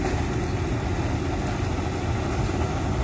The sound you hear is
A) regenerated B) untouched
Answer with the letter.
B